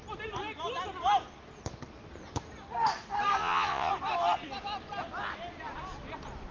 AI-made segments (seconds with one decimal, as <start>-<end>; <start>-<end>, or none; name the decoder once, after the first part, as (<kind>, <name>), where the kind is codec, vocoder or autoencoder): 3.4-3.9 (vocoder, Vocos)